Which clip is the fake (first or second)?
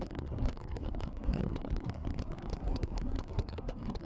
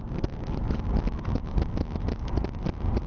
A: first